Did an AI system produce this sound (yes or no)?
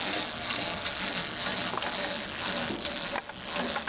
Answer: no